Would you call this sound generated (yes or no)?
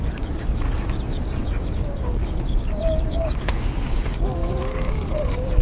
yes